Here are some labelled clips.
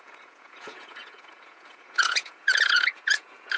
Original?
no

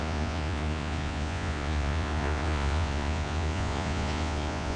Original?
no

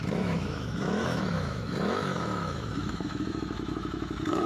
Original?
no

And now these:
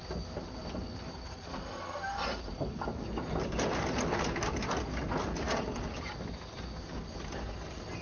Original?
yes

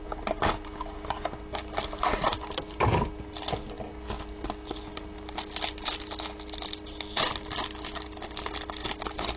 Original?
yes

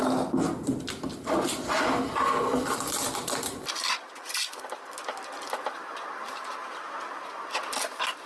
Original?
yes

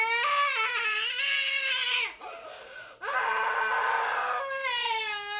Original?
yes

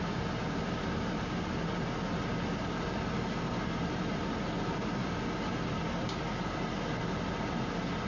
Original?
yes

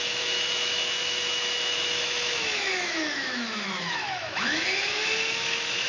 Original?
no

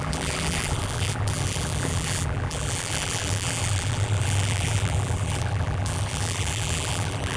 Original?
no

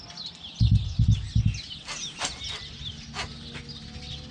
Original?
yes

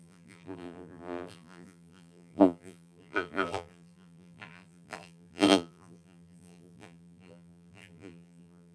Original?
no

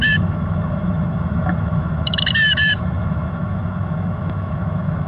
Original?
no